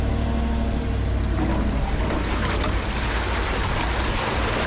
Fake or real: real